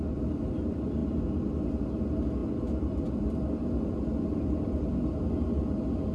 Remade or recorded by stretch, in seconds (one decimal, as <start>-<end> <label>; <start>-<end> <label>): 0.0-6.1 recorded